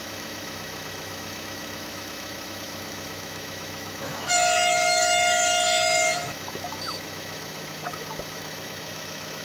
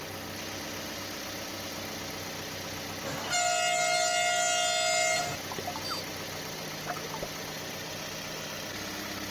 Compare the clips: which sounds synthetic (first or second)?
first